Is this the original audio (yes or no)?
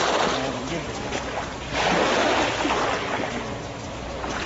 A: yes